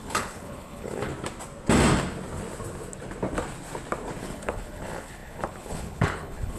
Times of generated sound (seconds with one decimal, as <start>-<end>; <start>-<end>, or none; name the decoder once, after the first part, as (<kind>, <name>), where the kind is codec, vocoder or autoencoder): 0.0-1.1 (codec, HILCodec); 4.2-6.6